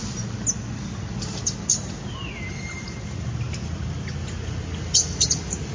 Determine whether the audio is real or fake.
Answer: real